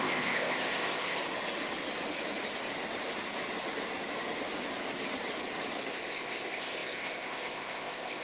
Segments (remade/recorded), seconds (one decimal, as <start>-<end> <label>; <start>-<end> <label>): 0.0-1.2 remade; 1.2-5.9 recorded; 5.9-8.2 remade

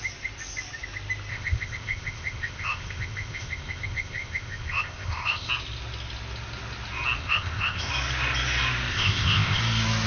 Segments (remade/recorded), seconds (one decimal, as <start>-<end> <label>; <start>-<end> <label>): 0.0-1.3 recorded; 1.3-5.5 remade; 5.5-7.2 recorded; 7.2-7.9 remade; 7.9-8.9 recorded; 8.9-9.6 remade; 9.6-10.1 recorded

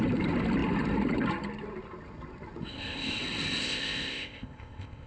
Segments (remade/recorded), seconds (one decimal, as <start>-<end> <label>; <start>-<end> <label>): 0.0-2.7 recorded; 2.7-3.2 remade; 3.2-3.6 recorded; 3.6-5.1 remade

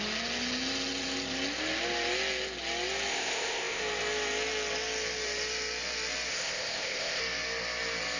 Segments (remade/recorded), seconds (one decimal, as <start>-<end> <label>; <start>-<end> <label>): 0.0-3.1 recorded; 3.1-3.8 remade; 3.8-6.3 recorded; 6.3-7.2 remade; 7.2-8.2 recorded